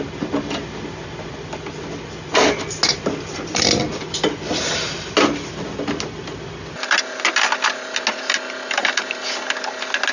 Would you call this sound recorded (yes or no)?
yes